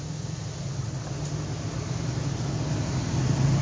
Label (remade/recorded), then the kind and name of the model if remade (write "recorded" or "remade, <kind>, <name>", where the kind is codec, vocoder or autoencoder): recorded